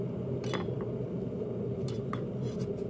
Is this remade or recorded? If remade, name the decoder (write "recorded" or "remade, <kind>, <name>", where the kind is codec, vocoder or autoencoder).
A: recorded